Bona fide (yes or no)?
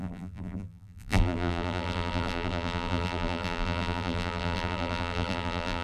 no